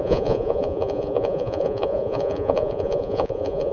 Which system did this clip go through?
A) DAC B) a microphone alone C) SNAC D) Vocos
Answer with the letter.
D